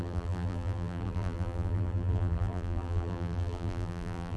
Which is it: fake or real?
fake